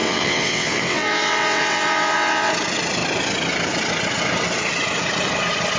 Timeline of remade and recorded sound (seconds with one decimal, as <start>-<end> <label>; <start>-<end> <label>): 0.0-2.5 remade; 2.5-5.8 recorded